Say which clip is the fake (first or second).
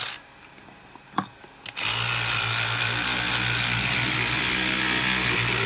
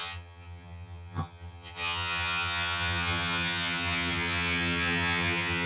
second